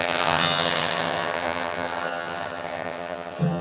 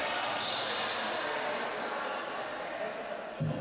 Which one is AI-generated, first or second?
first